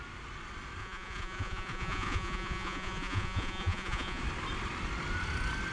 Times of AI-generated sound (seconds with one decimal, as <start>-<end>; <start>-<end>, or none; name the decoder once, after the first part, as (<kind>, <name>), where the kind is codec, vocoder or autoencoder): 0.8-4.2 (vocoder, Vocos)